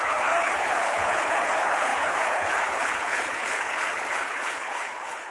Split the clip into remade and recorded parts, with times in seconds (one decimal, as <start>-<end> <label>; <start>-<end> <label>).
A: 0.0-5.3 remade